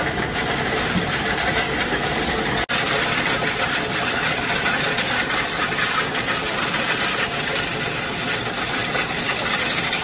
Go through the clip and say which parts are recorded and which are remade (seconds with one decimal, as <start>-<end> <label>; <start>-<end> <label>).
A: 0.0-10.0 recorded